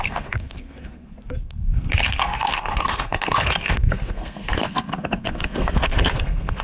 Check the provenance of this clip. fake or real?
fake